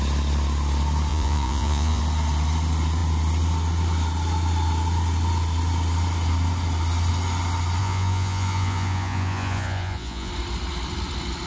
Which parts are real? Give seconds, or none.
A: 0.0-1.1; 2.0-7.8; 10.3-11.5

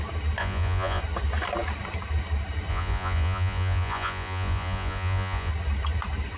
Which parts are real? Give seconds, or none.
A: 0.0-0.4; 1.0-2.7; 5.5-6.4

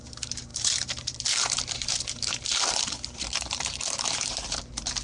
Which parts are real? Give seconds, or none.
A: none

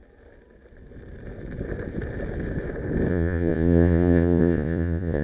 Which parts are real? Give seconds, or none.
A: 0.0-3.1

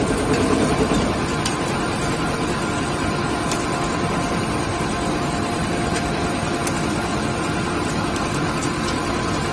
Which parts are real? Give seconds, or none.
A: 0.0-9.5